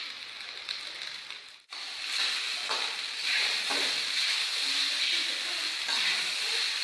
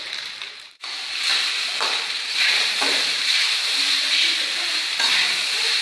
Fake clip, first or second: second